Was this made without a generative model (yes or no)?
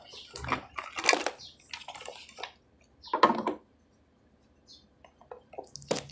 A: yes